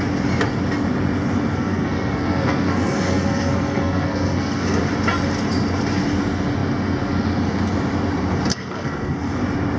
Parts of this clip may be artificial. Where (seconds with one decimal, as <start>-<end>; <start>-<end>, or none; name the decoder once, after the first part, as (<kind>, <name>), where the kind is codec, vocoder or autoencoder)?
1.5-4.8 (codec, SNAC); 8.5-9.4